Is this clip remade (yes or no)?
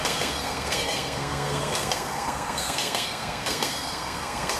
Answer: yes